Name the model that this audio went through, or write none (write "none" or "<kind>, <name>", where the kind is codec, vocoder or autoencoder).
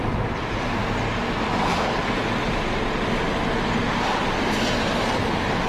none